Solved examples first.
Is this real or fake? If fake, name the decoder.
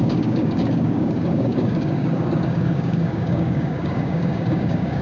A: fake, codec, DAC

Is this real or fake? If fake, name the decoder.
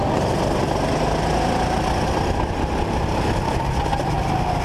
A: real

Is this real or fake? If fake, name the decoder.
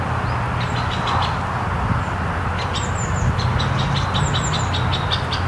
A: real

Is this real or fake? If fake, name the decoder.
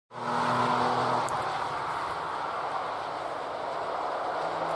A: real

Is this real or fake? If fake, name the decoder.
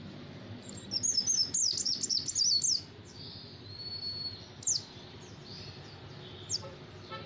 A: real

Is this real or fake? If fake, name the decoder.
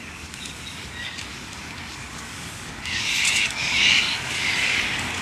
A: fake, codec, DAC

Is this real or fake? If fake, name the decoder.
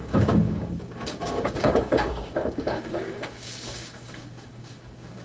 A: fake, codec, DAC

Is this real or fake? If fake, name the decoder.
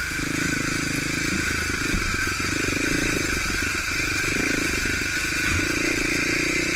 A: real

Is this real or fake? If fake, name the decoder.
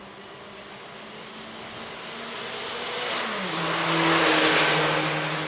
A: real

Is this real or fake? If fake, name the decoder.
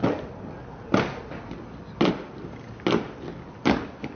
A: real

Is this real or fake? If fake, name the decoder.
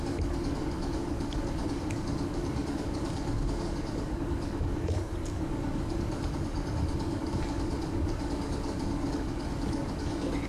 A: fake, codec, DAC